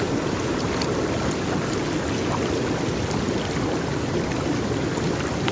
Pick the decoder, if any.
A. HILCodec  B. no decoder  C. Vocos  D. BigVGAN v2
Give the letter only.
B